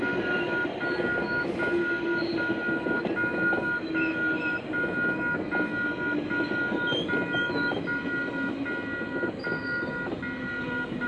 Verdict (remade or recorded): recorded